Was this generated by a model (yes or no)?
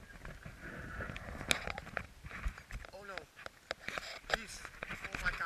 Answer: no